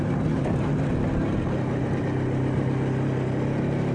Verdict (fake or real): real